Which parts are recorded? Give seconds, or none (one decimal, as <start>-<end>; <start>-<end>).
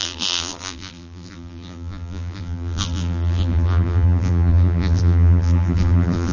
none